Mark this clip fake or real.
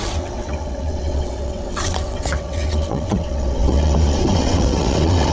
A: fake